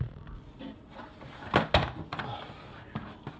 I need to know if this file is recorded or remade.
recorded